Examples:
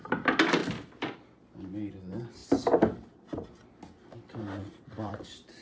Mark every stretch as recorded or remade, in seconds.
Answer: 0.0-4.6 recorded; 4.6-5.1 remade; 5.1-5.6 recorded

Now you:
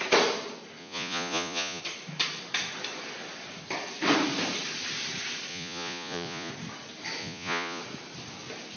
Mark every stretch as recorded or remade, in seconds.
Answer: 0.0-0.8 recorded; 0.8-1.8 remade; 1.8-5.5 recorded; 5.5-6.5 remade; 6.5-7.2 recorded; 7.2-7.8 remade; 7.8-8.8 recorded

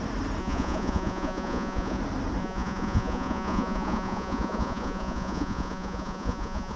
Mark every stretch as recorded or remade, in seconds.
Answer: 0.0-0.4 recorded; 0.4-2.0 remade; 2.0-2.4 recorded; 2.4-6.8 remade